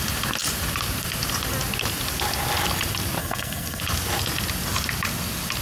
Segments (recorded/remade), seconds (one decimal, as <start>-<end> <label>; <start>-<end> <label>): 0.0-3.2 recorded; 3.2-3.8 remade; 3.8-5.6 recorded